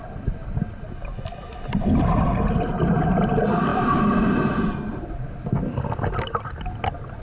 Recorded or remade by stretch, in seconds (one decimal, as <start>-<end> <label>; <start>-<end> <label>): 0.0-7.2 recorded